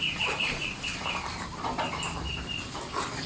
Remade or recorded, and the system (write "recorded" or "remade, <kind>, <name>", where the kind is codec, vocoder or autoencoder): recorded